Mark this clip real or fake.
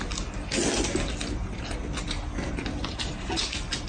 real